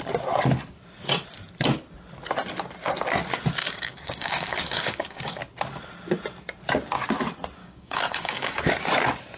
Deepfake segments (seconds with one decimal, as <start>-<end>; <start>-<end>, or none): 3.6-5.4; 7.6-8.6